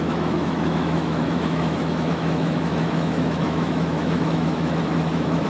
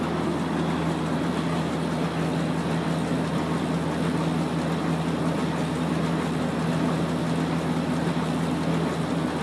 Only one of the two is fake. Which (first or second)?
first